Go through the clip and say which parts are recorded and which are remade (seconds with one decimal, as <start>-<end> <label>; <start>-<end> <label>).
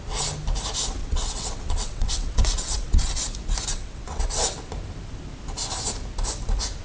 0.0-1.0 recorded; 1.0-3.2 remade; 3.2-3.7 recorded; 3.7-4.4 remade; 4.4-6.8 recorded